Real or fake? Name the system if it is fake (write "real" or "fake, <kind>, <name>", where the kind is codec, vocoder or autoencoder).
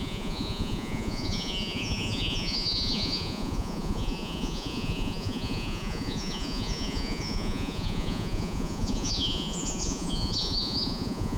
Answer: fake, vocoder, Vocos